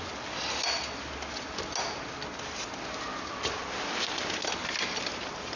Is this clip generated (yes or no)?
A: no